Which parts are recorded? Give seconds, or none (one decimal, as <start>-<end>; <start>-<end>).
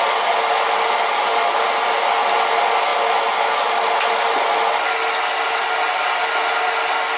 0.0-7.2